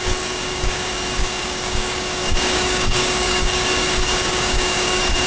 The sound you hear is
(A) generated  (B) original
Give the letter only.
A